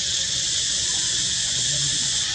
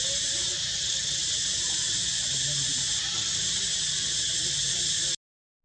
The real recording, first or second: second